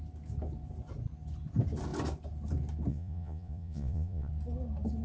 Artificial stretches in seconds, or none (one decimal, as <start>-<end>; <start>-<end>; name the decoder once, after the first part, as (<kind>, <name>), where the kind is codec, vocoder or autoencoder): 2.9-4.3 (vocoder, Vocos)